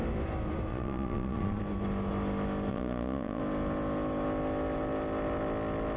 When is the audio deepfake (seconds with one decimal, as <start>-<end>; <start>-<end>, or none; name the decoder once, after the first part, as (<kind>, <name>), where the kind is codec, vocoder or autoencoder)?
0.7-1.6 (vocoder, Vocos); 2.7-3.4